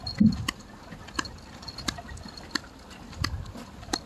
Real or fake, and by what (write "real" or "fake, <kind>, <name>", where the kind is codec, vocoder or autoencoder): real